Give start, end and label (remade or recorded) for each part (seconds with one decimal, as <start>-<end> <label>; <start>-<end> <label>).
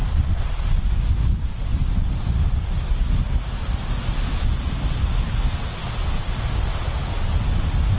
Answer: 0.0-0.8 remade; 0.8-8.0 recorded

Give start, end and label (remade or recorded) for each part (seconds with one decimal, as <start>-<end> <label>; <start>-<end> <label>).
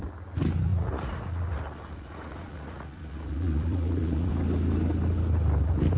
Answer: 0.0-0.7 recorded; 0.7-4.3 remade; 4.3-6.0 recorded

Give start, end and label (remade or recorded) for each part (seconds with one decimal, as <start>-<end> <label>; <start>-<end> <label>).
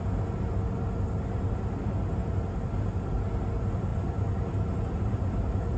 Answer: 0.0-5.8 recorded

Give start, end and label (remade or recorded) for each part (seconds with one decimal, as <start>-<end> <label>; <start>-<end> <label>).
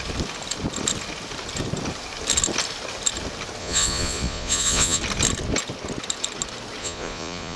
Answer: 0.0-3.6 recorded; 3.6-5.0 remade; 5.0-6.8 recorded; 6.8-7.6 remade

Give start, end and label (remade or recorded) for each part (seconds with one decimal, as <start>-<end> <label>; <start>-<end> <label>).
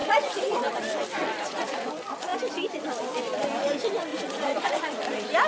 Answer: 0.0-0.6 remade; 0.6-1.2 recorded; 1.2-1.9 remade; 1.9-4.1 recorded; 4.1-5.0 remade; 5.0-5.5 recorded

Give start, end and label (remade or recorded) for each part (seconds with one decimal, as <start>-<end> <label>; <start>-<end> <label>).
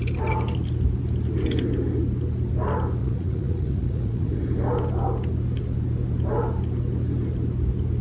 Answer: 0.0-3.0 recorded; 3.0-4.4 remade; 4.4-8.0 recorded